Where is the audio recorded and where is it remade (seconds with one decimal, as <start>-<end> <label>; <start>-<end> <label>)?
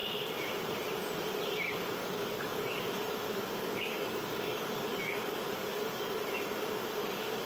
0.0-2.0 recorded; 2.0-2.8 remade; 2.8-3.6 recorded; 3.6-6.2 remade; 6.2-7.0 recorded; 7.0-7.5 remade